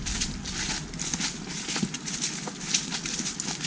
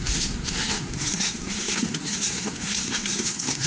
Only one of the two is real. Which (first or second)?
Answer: first